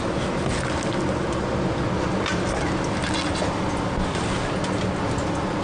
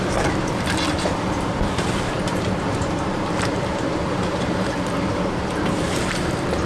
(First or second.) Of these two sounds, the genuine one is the first